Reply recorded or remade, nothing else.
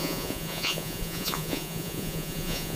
remade